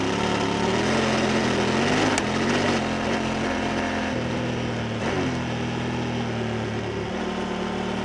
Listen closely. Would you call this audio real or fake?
real